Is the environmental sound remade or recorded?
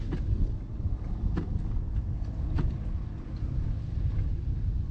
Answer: recorded